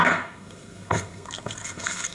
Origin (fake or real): fake